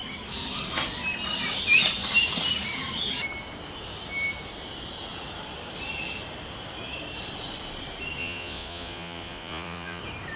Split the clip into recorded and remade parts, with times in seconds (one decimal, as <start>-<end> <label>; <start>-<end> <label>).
0.0-8.2 recorded; 8.2-10.0 remade; 10.0-10.4 recorded